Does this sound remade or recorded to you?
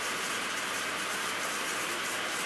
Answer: remade